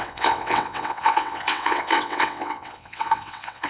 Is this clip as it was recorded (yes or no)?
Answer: no